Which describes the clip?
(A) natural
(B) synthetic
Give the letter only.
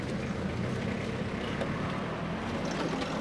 A